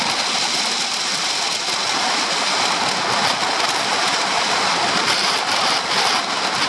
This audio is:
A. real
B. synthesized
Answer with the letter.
A